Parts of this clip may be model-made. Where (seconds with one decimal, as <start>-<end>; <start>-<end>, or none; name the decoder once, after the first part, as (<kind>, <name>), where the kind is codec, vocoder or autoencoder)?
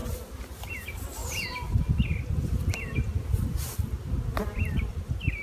0.0-0.7 (vocoder, BigVGAN v2); 4.3-4.9